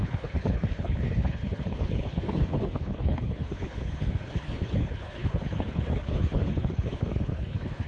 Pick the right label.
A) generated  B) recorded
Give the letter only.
A